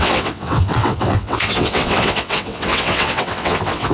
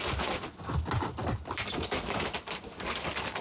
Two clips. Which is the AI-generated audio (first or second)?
first